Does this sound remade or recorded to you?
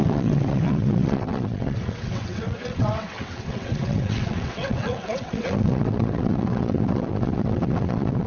remade